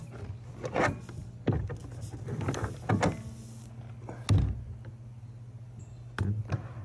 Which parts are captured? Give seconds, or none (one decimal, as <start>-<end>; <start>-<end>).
0.0-6.8